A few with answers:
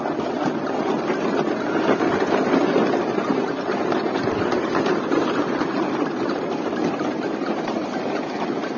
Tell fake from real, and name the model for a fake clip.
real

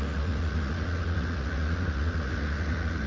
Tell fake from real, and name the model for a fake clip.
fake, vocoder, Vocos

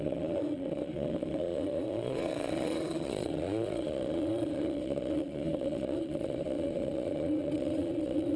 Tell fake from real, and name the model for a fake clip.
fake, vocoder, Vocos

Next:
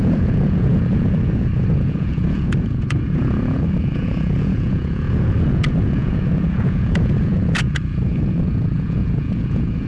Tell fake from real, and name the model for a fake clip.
fake, vocoder, Vocos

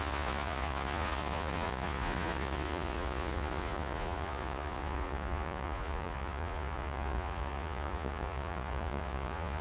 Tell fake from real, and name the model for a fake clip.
fake, vocoder, Vocos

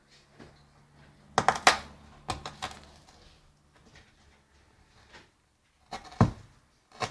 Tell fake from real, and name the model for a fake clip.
real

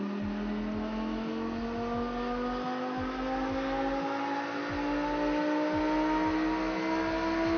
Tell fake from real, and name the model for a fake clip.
real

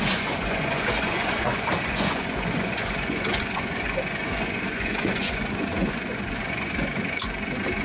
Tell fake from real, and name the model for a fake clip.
fake, vocoder, Vocos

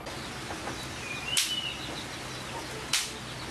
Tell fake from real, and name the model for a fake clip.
real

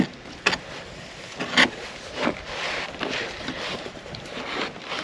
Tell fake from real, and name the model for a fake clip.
real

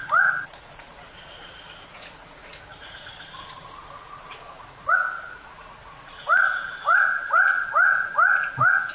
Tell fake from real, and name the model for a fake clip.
fake, vocoder, Vocos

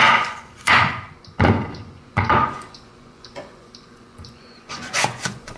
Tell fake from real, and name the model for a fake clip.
fake, vocoder, Vocos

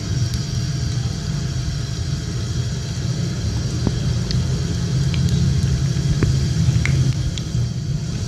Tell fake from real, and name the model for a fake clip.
real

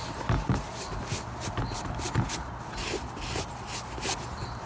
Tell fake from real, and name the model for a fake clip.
real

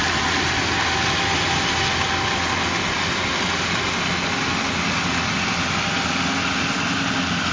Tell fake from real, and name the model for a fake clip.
real